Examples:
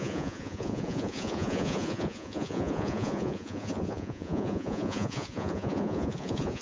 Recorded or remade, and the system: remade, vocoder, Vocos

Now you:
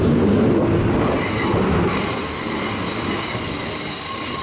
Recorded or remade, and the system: recorded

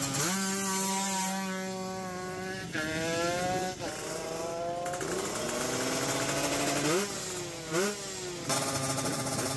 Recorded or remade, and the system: recorded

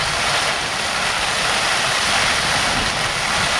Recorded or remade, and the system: recorded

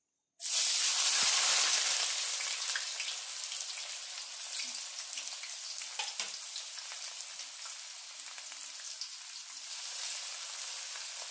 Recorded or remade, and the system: recorded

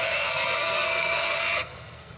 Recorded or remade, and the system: remade, codec, SNAC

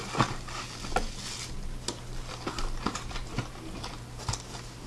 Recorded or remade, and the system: recorded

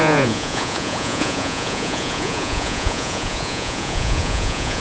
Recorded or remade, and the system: remade, vocoder, Vocos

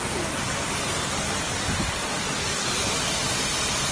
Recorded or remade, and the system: recorded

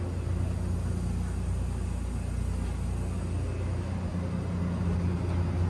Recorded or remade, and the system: recorded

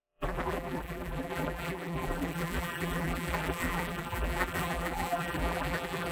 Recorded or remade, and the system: remade, vocoder, BigVGAN v2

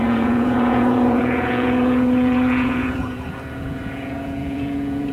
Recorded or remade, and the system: remade, vocoder, Vocos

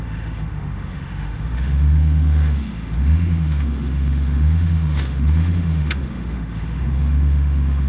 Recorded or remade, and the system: remade, autoencoder, DAC-VAE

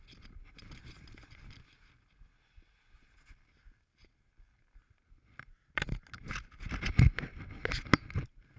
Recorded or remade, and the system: recorded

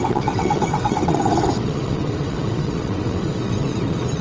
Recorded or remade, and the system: remade, vocoder, WaveNeXt